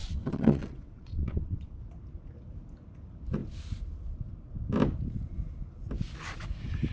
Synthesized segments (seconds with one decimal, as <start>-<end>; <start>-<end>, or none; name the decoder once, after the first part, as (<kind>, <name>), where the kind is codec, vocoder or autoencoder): 0.0-1.8 (vocoder, WaveNeXt)